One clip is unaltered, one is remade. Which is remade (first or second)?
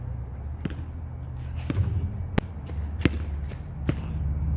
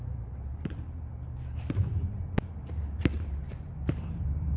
second